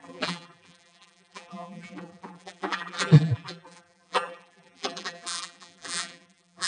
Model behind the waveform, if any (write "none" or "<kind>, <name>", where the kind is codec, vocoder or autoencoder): vocoder, BigVGAN v2